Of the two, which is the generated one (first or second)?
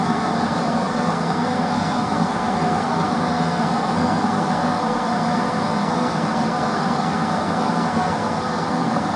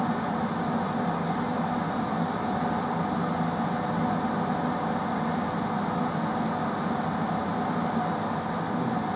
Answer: first